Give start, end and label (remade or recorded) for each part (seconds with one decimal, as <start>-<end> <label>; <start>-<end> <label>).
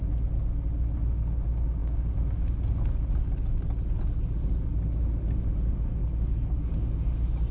0.0-6.0 recorded; 6.0-6.7 remade; 6.7-7.5 recorded